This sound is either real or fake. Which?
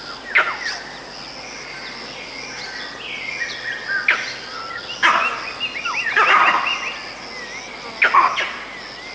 real